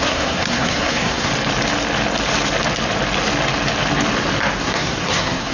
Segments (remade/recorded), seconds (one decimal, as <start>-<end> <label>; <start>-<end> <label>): 0.0-1.3 remade; 1.3-4.6 recorded; 4.6-5.5 remade